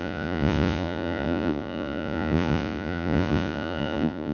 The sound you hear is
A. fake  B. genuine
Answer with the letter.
A